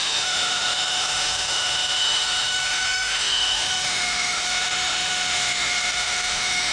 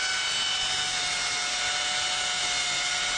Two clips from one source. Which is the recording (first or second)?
second